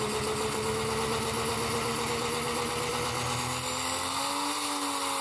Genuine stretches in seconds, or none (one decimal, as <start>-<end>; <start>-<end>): 0.0-5.2